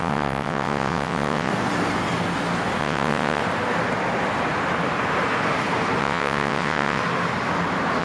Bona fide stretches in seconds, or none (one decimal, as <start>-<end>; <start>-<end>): 1.5-2.8; 3.4-6.0; 7.0-8.0